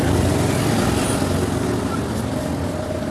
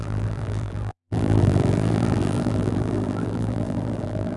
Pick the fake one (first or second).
second